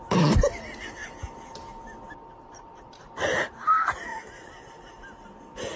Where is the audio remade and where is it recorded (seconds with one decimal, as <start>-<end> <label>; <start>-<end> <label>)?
0.0-5.8 recorded